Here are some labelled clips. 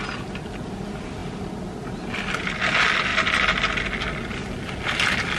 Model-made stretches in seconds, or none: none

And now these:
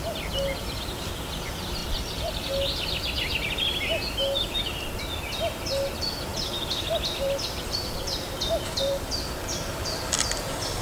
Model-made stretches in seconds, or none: 0.5-1.3 (vocoder, BigVGAN v2); 1.8-2.3; 6.3-9.0

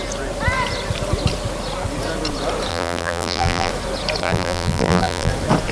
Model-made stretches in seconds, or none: 2.7-3.7 (vocoder, BigVGAN v2); 4.2-5.3

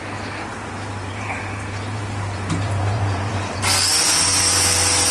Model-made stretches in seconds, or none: 0.5-3.6 (vocoder, BigVGAN v2)